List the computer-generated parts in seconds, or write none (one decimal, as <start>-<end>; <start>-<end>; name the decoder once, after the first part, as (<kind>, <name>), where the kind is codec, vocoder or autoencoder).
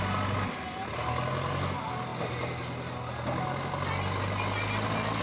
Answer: none